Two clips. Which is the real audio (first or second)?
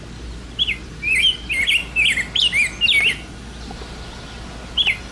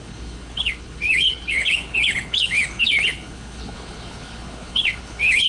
first